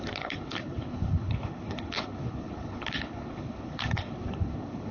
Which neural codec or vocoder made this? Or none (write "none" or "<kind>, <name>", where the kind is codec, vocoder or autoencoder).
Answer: codec, HILCodec